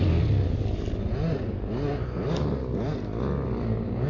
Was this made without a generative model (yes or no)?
yes